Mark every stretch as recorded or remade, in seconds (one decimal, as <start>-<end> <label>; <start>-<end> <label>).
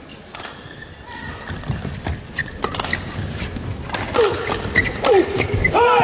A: 0.0-6.0 recorded